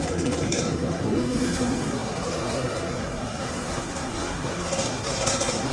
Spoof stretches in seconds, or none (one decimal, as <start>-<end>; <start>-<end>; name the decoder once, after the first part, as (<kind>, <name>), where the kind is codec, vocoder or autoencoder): 0.0-5.7 (codec, SNAC)